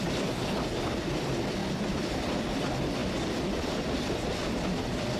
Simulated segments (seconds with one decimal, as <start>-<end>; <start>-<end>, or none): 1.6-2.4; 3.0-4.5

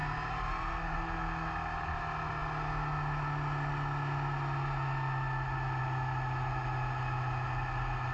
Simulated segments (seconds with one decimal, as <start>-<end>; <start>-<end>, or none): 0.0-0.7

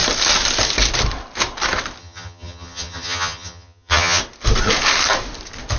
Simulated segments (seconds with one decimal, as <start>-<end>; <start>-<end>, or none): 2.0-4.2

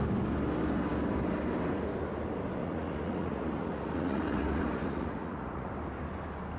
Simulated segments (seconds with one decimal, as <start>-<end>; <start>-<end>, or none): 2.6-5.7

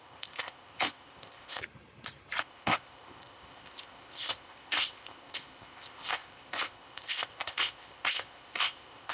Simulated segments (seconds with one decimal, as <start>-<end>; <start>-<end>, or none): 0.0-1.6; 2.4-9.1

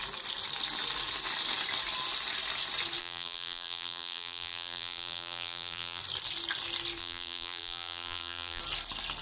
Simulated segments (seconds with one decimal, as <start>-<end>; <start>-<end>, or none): 3.0-6.0; 7.0-8.6

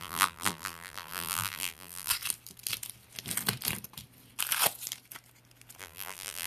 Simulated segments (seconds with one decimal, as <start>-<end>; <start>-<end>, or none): 0.0-2.1; 5.8-6.5